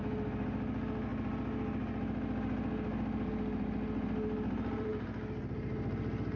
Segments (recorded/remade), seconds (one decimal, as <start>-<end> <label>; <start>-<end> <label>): 0.0-6.4 recorded